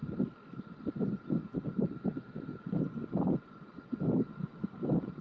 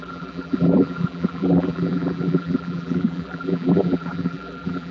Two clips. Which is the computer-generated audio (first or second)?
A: second